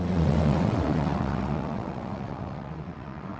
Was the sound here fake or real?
fake